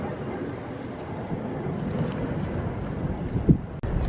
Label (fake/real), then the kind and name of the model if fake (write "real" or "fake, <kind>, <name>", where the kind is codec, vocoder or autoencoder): real